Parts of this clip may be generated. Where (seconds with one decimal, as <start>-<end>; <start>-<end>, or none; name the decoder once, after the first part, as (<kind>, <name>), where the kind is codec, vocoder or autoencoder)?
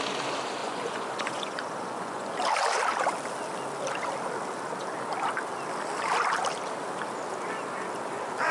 0.6-2.3 (vocoder, Vocos)